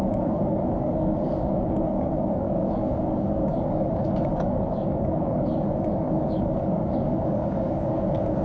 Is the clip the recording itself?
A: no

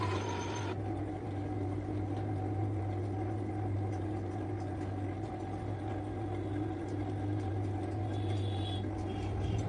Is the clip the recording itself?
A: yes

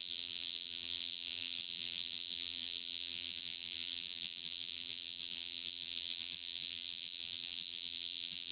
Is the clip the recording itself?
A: no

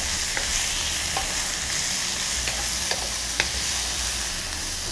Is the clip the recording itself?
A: yes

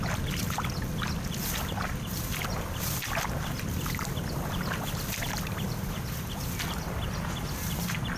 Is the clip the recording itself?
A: yes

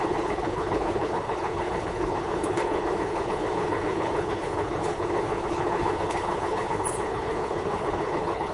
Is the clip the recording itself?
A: no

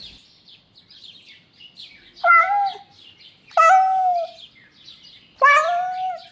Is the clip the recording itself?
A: yes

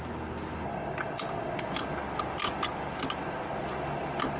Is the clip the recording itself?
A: yes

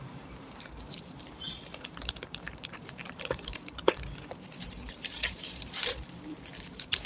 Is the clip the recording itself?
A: no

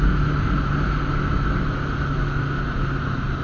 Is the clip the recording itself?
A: yes